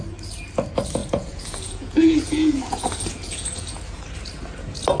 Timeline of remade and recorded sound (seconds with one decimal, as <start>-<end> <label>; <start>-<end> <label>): 0.0-1.0 recorded; 1.0-4.0 remade; 4.0-5.0 recorded